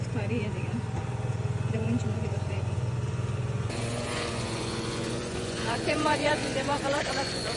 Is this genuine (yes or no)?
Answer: no